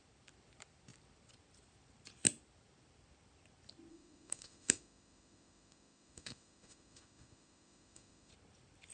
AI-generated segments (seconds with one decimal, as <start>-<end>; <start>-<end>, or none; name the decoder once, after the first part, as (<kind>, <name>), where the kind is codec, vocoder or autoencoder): 3.9-8.3 (autoencoder, DAC-VAE)